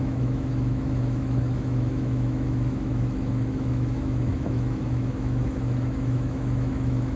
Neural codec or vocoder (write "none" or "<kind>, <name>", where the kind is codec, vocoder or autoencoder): autoencoder, DAC-VAE